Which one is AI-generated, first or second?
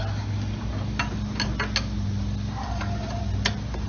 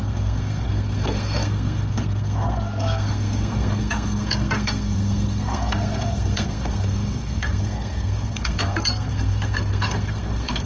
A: second